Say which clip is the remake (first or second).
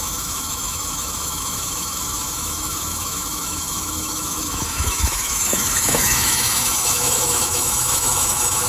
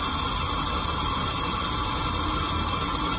first